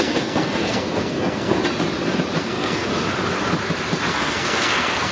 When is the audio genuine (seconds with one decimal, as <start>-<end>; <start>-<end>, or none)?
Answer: 1.6-2.4; 2.9-4.1